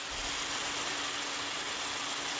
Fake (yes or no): no